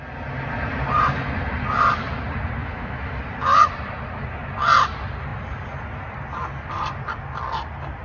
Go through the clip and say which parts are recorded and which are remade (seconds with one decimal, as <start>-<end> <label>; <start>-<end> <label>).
0.0-2.6 recorded; 2.6-3.2 remade; 3.2-8.0 recorded